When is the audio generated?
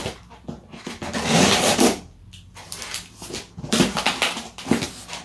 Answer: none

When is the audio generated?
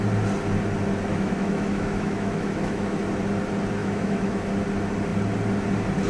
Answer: 1.1-3.0 (autoencoder, DAC-VAE); 3.8-4.5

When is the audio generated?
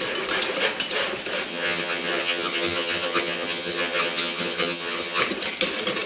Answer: 1.5-5.2 (vocoder, HiFi-GAN)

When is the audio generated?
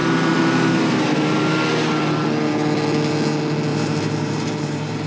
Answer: 3.7-5.1 (vocoder, BigVGAN v2)